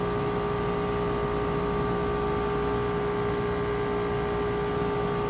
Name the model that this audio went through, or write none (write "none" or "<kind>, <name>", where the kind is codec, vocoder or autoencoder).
none